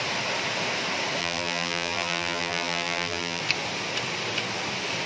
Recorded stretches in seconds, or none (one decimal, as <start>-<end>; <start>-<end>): 0.0-1.2; 3.4-5.1

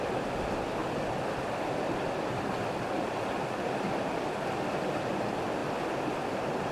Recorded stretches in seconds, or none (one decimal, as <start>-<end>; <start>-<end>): 0.0-0.8; 2.4-6.7